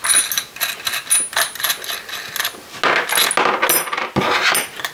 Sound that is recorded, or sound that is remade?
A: recorded